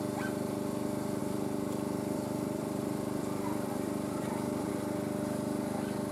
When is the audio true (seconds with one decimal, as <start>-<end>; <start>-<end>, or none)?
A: 0.0-1.2; 4.7-6.1